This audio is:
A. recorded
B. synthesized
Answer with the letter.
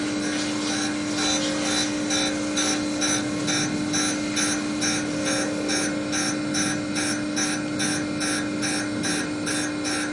A